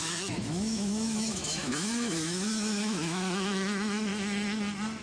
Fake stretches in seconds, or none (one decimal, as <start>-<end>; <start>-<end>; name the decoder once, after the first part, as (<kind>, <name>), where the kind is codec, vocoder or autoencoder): 0.0-4.1 (autoencoder, DAC-VAE)